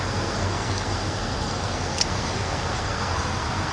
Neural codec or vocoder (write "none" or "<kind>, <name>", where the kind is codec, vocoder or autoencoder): codec, SNAC